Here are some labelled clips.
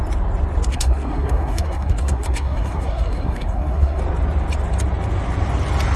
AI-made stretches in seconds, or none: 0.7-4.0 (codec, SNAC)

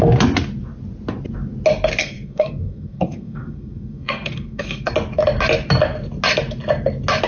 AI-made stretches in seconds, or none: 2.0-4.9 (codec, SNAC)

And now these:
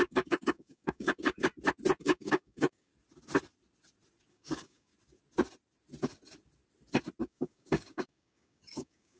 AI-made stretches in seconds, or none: 0.0-1.5 (codec, DAC); 2.0-2.9; 4.3-4.9; 7.2-9.2